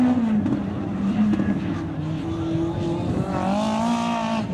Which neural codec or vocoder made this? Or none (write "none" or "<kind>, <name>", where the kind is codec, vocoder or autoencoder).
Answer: none